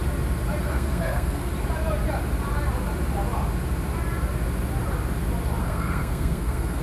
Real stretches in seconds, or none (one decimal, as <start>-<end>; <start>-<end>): 0.0-0.6; 1.5-5.6

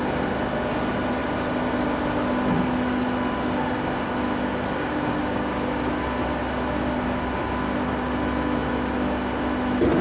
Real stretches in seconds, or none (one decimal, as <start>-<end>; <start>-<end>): 0.0-10.0